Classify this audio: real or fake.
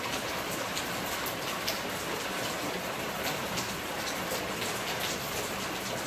real